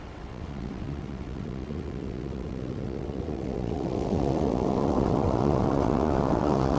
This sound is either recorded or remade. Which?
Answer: remade